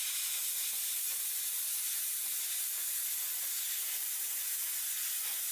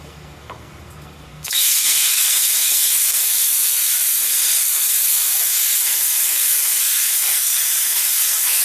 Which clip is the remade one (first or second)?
second